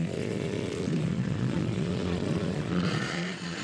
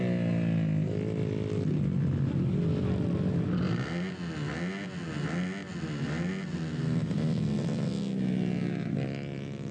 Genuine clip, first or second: second